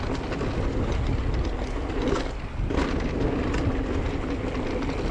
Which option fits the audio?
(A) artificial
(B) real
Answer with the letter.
B